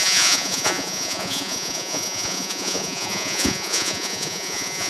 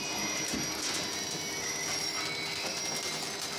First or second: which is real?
second